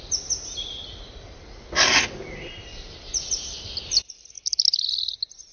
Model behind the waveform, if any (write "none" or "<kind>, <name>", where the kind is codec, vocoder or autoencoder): none